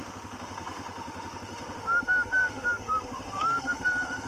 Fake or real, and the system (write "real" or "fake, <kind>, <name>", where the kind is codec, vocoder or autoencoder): fake, autoencoder, DAC-VAE